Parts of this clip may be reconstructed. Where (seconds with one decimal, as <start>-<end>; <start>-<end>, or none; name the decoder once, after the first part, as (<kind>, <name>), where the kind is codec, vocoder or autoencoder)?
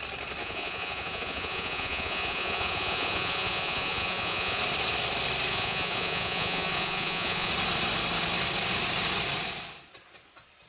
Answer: 0.4-4.6 (vocoder, Vocos); 5.5-7.5